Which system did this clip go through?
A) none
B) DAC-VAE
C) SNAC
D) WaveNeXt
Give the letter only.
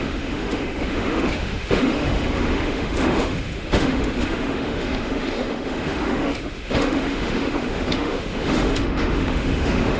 B